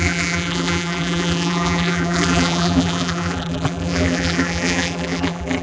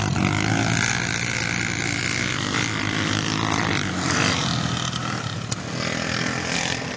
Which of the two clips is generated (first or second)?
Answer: first